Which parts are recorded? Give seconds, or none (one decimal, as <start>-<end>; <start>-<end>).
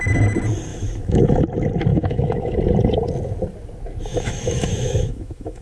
0.0-0.7; 1.4-1.9; 2.6-4.1